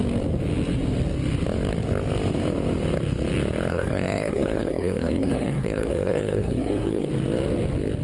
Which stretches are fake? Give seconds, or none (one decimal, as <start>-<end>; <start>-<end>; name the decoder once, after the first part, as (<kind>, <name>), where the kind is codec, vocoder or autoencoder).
3.7-7.1 (codec, SNAC)